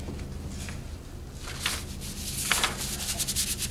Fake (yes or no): no